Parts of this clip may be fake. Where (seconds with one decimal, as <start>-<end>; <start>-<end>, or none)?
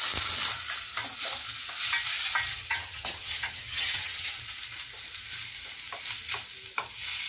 2.5-4.3